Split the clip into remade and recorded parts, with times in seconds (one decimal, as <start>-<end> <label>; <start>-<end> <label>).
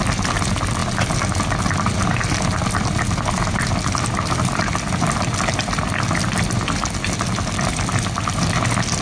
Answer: 0.0-9.0 remade